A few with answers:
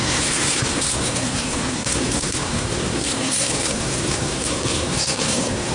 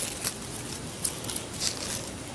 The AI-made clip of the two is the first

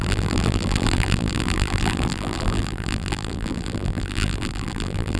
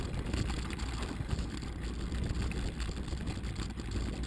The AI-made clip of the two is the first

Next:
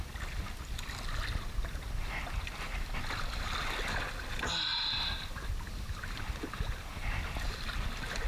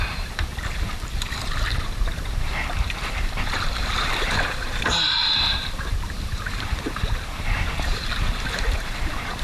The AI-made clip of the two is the second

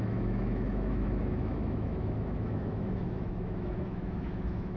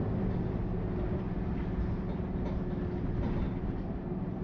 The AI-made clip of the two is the first